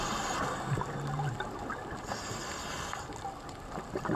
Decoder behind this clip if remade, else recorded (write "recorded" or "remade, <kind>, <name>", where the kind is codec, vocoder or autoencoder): recorded